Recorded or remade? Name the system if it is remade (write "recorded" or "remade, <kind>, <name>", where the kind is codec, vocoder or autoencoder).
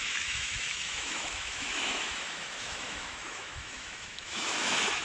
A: remade, autoencoder, DAC-VAE